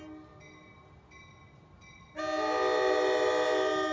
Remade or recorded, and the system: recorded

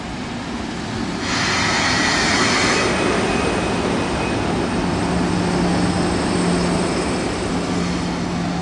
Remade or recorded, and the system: recorded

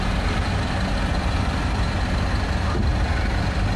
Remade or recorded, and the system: recorded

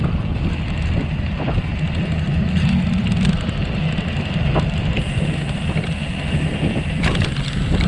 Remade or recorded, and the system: recorded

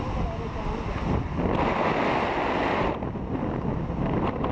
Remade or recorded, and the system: recorded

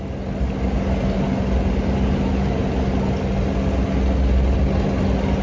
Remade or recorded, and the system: recorded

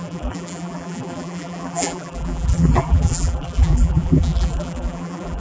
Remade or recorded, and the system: remade, vocoder, BigVGAN v2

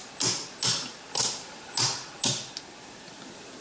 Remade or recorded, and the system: recorded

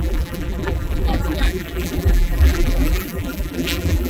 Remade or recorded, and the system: remade, vocoder, BigVGAN v2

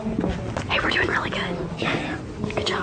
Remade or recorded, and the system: recorded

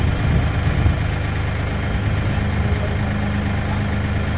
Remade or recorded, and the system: recorded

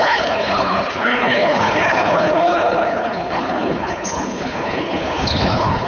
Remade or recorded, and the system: remade, codec, HILCodec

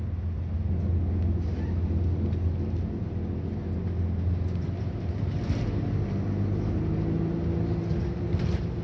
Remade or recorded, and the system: recorded